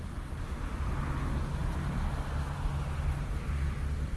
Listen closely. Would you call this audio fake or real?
real